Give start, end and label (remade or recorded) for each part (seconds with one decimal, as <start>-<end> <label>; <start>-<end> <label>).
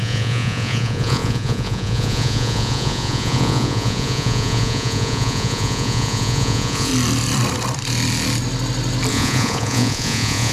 0.0-6.9 remade; 6.9-9.1 recorded; 9.1-10.5 remade